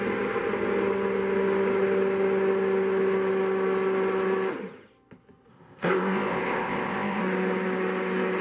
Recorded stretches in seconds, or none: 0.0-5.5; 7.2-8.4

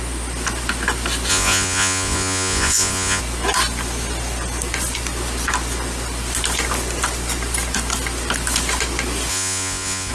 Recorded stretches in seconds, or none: 0.0-1.3; 3.2-9.3